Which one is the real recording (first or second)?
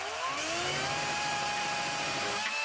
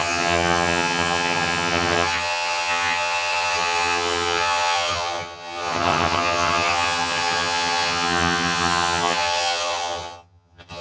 first